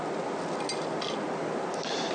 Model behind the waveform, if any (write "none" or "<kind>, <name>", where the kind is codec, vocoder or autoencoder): none